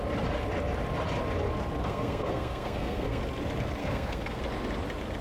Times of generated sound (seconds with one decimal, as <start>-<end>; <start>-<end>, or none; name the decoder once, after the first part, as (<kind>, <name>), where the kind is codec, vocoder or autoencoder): 1.8-3.2 (codec, SNAC); 3.8-4.4